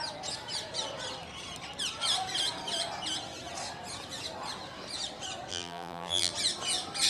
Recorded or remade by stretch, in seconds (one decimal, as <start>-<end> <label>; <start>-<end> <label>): 0.0-5.5 recorded; 5.5-6.3 remade; 6.3-7.1 recorded